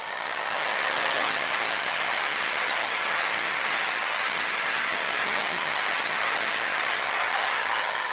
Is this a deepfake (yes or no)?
yes